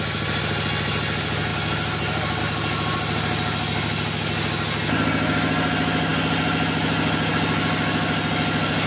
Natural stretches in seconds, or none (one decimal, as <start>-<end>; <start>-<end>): 0.0-8.9